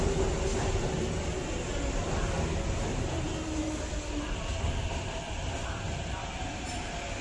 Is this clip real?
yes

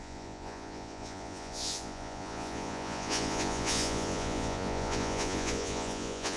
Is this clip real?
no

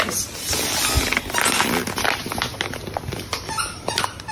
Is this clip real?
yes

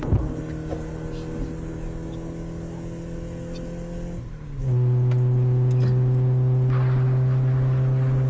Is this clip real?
yes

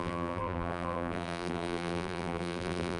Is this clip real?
no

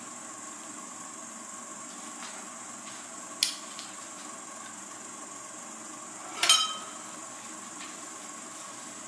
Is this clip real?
yes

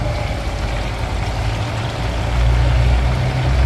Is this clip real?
yes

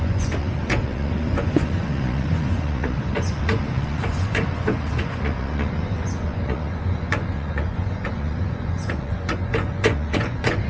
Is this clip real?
no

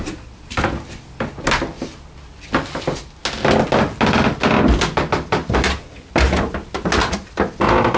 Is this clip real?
yes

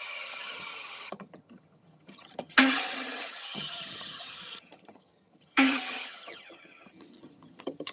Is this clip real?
no